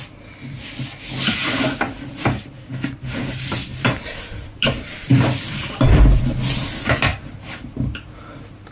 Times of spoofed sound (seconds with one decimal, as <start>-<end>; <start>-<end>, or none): 3.7-6.2